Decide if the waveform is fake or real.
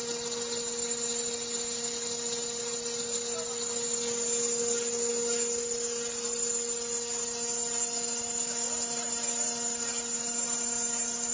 real